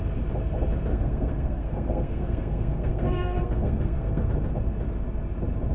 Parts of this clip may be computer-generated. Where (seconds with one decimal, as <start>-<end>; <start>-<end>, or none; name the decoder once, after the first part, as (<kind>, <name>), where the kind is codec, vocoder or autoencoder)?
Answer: 0.9-4.3 (codec, SNAC)